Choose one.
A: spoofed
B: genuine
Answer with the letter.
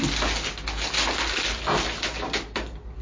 B